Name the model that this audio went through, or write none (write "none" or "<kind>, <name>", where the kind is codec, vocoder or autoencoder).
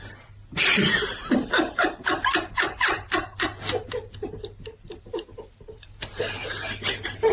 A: none